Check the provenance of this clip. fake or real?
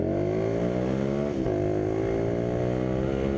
real